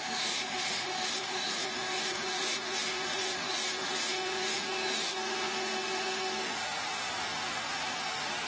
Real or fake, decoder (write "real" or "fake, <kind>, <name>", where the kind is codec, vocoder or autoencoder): fake, autoencoder, DAC-VAE